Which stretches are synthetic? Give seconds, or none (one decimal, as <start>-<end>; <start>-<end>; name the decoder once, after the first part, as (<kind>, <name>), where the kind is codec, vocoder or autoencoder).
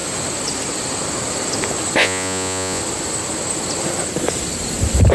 2.0-2.8 (vocoder, Vocos)